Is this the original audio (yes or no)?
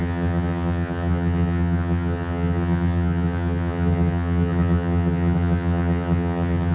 no